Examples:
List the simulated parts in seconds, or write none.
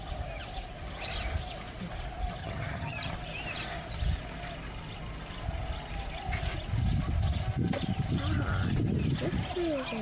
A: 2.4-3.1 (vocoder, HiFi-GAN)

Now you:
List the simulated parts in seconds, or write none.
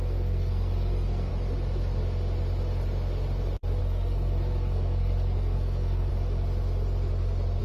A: 0.0-1.3 (codec, SNAC); 3.8-6.1